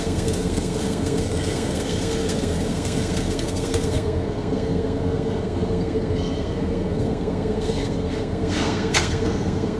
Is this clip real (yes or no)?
no